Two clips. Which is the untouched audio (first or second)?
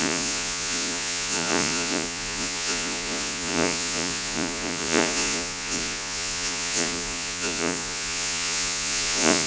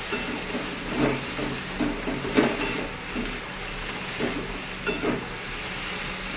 second